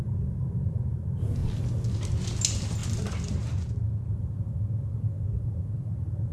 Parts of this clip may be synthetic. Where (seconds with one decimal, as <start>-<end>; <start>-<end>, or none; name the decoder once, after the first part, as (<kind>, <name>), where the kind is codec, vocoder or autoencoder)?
1.4-1.9 (vocoder, BigVGAN v2); 2.8-3.6